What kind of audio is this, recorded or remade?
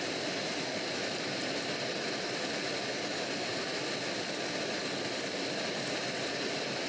recorded